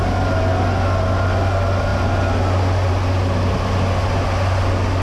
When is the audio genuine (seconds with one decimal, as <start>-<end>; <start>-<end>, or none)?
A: 0.0-5.0